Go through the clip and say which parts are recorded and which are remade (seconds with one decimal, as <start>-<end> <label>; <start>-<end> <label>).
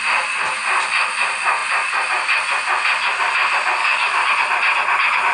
0.0-3.8 recorded; 3.8-4.3 remade; 4.3-5.3 recorded